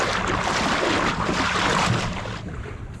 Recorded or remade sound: recorded